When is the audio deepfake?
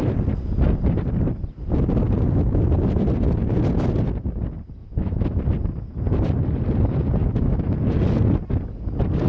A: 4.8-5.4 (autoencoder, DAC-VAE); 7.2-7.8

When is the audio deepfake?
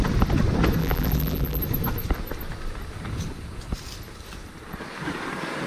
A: 0.8-1.6 (vocoder, BigVGAN v2)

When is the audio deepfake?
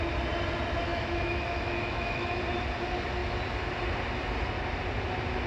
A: 0.9-2.4 (autoencoder, DAC-VAE)